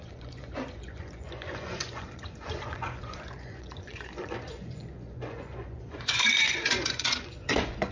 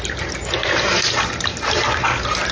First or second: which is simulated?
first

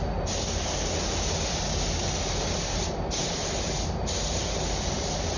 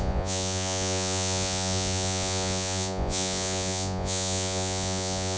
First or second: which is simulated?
second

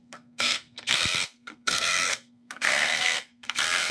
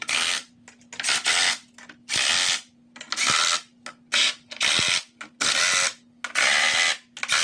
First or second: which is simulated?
first